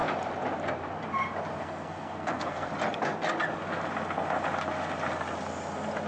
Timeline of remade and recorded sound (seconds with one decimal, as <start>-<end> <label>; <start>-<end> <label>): 0.0-1.6 recorded; 1.6-2.7 remade; 2.7-6.1 recorded

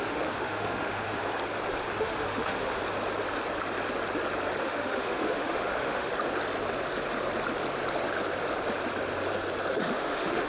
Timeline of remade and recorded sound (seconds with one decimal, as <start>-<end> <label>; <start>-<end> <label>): 0.0-1.2 remade; 1.2-1.9 recorded; 1.9-2.8 remade; 2.8-4.6 recorded; 4.6-6.1 remade; 6.1-9.7 recorded; 9.7-10.5 remade

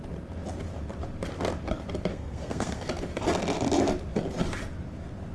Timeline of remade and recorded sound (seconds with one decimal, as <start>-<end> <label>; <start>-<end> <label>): 0.0-2.1 recorded; 2.1-2.9 remade; 2.9-5.3 recorded

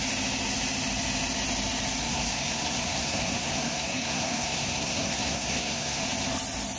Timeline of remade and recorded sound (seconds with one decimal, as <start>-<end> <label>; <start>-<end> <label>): 0.0-2.0 recorded; 2.0-6.0 remade; 6.0-6.8 recorded

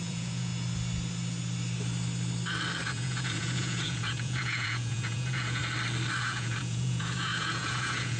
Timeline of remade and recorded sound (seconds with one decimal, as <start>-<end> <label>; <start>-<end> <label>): 0.0-0.5 remade; 0.5-2.8 recorded; 2.8-5.6 remade; 5.6-6.2 recorded; 6.2-8.2 remade

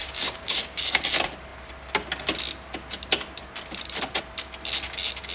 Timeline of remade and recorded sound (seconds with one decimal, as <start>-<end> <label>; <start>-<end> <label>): 0.0-1.0 remade; 1.0-5.3 recorded

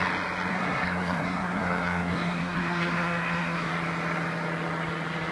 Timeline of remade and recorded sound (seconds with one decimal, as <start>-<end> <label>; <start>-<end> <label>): 0.0-0.5 recorded; 0.5-3.7 remade; 3.7-5.3 recorded

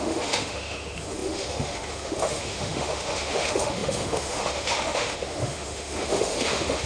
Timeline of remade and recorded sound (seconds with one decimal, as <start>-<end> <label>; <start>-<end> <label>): 0.0-6.9 remade